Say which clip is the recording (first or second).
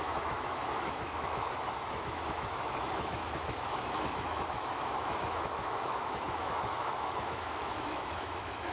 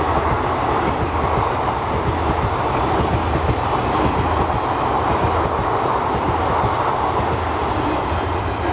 second